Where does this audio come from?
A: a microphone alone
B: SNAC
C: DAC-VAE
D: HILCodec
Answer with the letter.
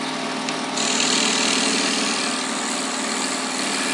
A